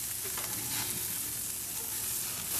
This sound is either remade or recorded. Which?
recorded